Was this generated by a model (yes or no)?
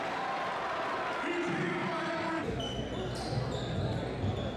no